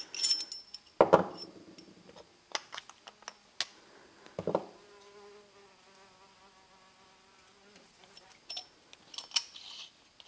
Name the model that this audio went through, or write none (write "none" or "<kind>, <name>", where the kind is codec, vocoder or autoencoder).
none